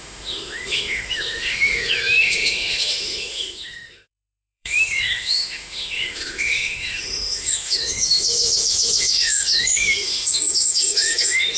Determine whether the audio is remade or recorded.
remade